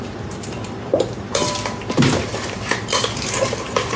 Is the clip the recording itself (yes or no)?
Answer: no